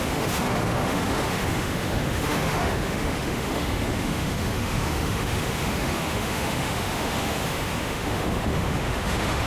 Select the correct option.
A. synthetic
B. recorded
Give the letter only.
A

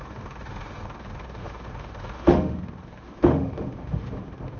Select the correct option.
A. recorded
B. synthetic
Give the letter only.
B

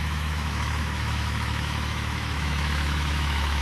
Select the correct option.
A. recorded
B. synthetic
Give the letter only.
B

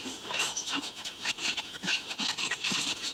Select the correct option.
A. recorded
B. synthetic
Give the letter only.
B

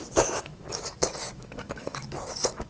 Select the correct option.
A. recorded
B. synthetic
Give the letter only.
B